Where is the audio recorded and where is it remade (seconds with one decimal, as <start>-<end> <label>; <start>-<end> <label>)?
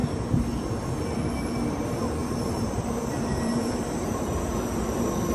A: 0.0-2.2 recorded; 2.2-4.4 remade; 4.4-5.3 recorded